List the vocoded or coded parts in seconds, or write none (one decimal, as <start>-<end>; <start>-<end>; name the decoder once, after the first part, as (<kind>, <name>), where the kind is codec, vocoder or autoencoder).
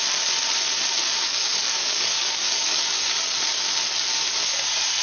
1.0-3.2 (codec, DAC)